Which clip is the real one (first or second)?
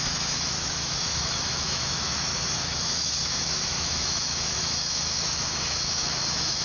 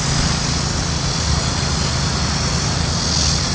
second